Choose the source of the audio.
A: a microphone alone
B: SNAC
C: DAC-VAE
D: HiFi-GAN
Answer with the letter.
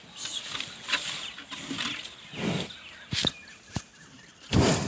A